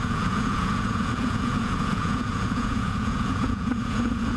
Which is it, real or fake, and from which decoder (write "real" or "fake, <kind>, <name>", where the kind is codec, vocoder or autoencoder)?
fake, vocoder, Vocos